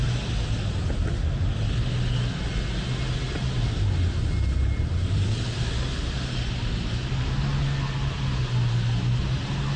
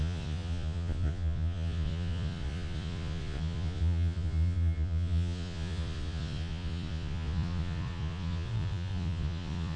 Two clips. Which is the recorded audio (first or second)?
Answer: first